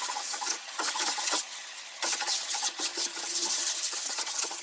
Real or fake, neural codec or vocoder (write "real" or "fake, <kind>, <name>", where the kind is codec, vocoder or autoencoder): fake, vocoder, HiFi-GAN